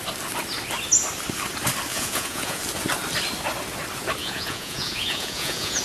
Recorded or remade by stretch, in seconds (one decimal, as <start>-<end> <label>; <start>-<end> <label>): 0.0-1.9 recorded; 1.9-2.6 remade; 2.6-4.2 recorded; 4.2-5.8 remade